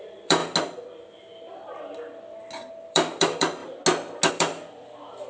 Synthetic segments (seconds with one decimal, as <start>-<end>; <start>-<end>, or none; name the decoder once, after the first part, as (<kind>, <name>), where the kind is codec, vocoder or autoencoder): 0.0-0.4 (vocoder, BigVGAN v2); 2.7-3.6; 4.3-5.3